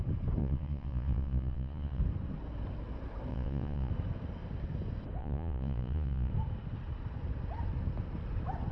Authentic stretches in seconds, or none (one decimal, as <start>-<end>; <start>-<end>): 0.0-0.4; 2.0-3.3; 3.9-5.2; 6.3-8.7